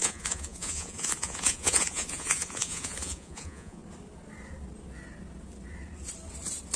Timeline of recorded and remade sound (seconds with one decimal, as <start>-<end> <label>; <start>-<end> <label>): 0.0-3.8 remade; 3.8-6.8 recorded